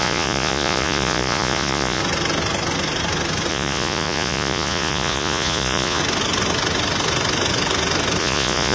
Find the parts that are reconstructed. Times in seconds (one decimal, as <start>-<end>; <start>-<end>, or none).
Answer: 0.0-2.0; 3.5-6.0; 8.2-8.7